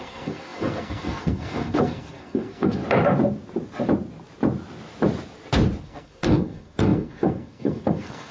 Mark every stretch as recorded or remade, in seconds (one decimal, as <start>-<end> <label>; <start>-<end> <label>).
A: 0.0-2.8 remade; 2.8-5.8 recorded; 5.8-8.3 remade